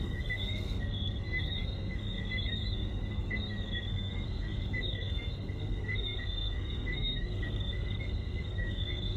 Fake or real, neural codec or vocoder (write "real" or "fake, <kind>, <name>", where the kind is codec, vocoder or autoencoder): fake, codec, SNAC